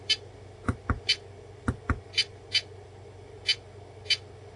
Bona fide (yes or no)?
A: yes